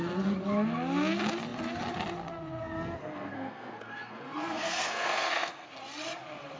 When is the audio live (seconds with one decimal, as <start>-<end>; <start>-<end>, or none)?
0.0-3.0; 5.7-6.6